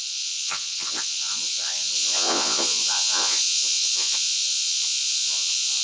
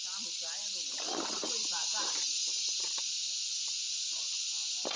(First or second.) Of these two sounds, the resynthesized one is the first